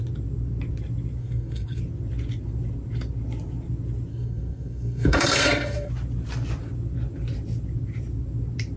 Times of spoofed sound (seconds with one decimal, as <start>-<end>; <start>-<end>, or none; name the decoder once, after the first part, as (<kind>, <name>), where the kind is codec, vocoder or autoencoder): 1.2-1.8 (codec, SNAC); 4.1-5.9